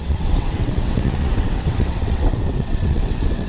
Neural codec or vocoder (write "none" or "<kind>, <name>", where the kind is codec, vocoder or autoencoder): vocoder, WaveNeXt